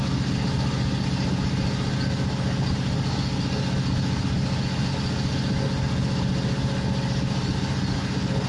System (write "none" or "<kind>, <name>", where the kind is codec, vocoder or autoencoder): none